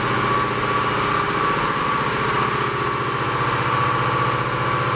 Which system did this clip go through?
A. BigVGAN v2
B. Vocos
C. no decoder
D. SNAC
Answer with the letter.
C